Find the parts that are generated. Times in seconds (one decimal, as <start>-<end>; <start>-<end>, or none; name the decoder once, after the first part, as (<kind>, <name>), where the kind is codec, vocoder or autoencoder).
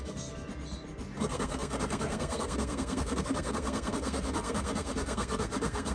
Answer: 0.0-0.5 (codec, SNAC); 1.2-5.9